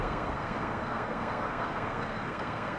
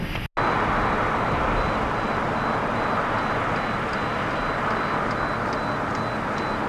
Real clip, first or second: second